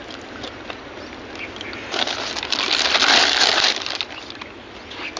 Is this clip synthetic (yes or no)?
no